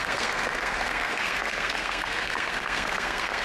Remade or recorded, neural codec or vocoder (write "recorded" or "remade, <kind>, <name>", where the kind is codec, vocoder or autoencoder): remade, codec, SNAC